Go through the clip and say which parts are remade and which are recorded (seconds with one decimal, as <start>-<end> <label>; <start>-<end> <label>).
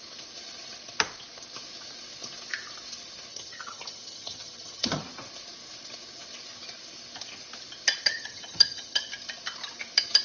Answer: 0.0-3.3 recorded; 3.3-5.0 remade; 5.0-8.0 recorded; 8.0-9.1 remade; 9.1-10.2 recorded